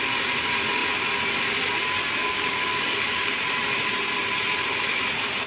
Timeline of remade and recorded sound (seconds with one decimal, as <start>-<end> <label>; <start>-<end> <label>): 0.0-2.2 recorded; 2.2-3.3 remade; 3.3-5.5 recorded